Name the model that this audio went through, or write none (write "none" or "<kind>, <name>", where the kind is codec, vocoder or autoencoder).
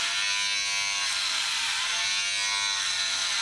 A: none